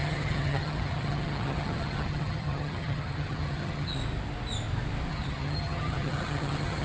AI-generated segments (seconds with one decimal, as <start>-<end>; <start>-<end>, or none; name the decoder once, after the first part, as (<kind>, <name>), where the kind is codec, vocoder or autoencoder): 0.0-4.0 (vocoder, HiFi-GAN); 5.1-6.8